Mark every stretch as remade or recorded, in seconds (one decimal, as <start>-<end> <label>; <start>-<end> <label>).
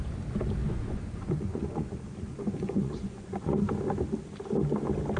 0.0-0.6 recorded; 0.6-3.6 remade; 3.6-5.2 recorded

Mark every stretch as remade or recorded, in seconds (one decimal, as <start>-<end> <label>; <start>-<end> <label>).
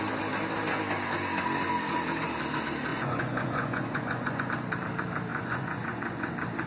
0.0-2.9 recorded; 2.9-4.5 remade; 4.5-5.3 recorded; 5.3-6.3 remade; 6.3-6.7 recorded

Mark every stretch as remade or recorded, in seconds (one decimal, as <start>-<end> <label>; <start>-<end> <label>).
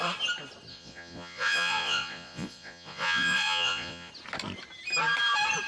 0.0-0.7 recorded; 0.7-4.1 remade; 4.1-5.7 recorded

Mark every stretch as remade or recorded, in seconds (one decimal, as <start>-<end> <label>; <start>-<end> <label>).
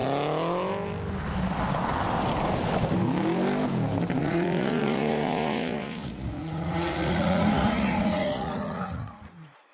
0.0-4.2 recorded; 4.2-9.7 remade